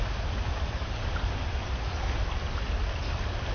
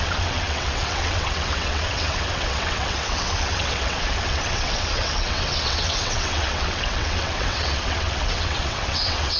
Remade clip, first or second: second